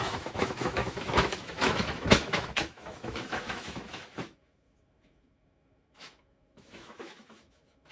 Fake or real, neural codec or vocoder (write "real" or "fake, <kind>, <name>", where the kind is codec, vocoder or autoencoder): fake, autoencoder, DAC-VAE